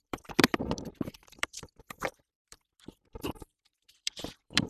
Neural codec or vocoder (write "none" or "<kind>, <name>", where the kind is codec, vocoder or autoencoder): vocoder, BigVGAN v2